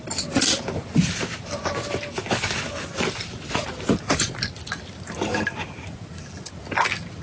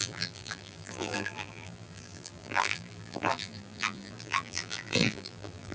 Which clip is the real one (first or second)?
first